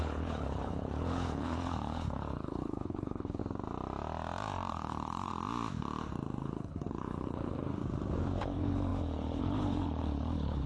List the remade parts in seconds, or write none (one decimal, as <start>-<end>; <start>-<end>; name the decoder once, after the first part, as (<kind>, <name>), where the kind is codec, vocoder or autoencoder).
0.0-3.4 (codec, HILCodec); 4.7-5.3; 6.4-7.8; 8.4-10.7